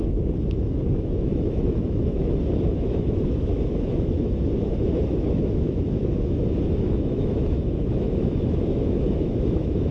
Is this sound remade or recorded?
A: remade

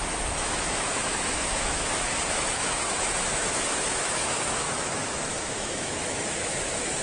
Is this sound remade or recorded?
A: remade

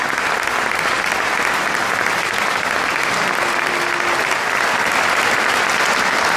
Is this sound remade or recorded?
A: recorded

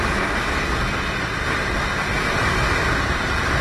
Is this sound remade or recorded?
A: recorded